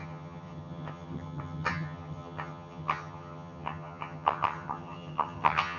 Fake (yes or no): yes